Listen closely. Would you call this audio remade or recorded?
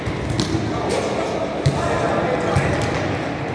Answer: recorded